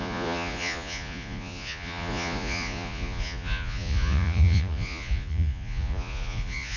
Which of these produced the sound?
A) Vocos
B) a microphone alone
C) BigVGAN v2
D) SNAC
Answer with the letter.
A